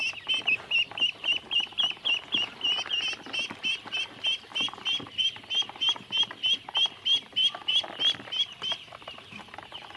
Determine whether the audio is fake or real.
fake